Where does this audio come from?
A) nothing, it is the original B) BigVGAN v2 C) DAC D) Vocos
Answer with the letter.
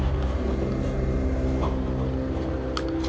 A